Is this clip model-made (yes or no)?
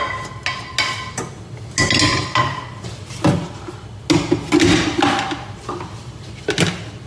no